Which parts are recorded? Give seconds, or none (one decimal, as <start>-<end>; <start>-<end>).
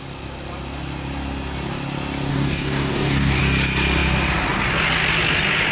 0.0-2.3; 3.4-5.7